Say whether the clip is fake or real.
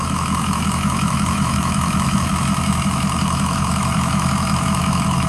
fake